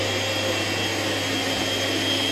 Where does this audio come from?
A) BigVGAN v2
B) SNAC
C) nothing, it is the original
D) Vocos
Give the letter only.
C